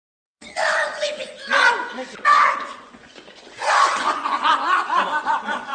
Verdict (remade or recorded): remade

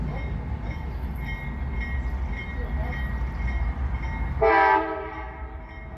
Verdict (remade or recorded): recorded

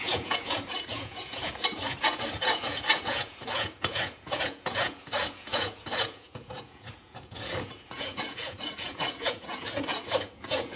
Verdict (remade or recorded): remade